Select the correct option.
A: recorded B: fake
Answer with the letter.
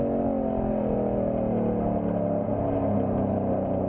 A